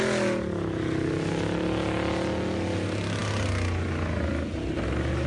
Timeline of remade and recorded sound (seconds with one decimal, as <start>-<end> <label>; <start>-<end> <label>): 0.0-5.3 recorded